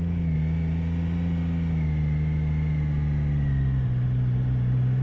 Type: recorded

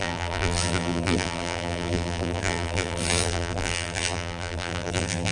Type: remade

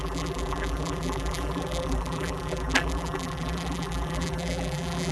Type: remade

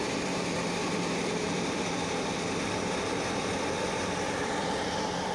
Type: remade